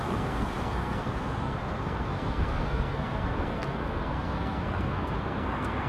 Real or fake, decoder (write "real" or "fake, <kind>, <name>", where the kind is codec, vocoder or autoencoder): fake, codec, SNAC